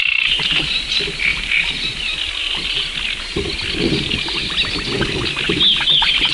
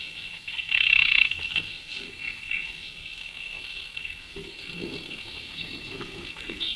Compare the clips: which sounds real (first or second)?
first